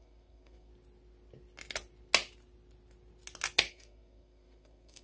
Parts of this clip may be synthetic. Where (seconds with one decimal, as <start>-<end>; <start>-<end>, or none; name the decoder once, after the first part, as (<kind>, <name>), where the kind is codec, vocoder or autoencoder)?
0.0-0.7 (codec, SNAC); 3.7-5.0